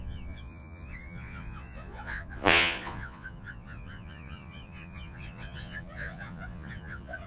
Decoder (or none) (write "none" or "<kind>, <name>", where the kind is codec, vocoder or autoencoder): vocoder, Vocos